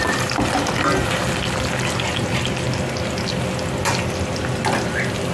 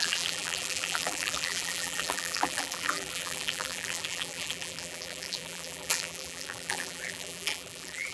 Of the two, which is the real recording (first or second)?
first